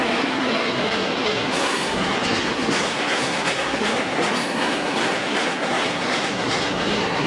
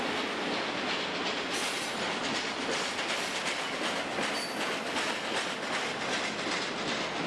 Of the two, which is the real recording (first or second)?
second